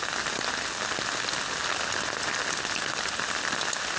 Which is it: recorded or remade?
recorded